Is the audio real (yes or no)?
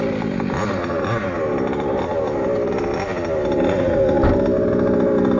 yes